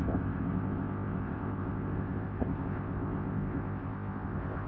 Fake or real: fake